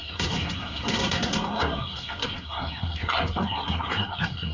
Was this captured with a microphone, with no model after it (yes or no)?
no